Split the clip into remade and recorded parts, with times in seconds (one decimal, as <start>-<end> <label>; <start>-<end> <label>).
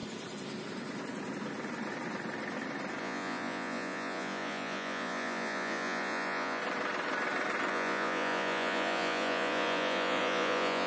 0.0-3.0 recorded; 3.0-6.6 remade; 6.6-7.7 recorded; 7.7-10.9 remade